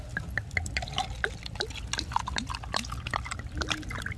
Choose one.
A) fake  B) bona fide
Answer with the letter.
B